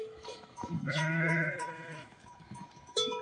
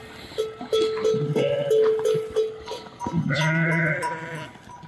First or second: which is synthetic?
first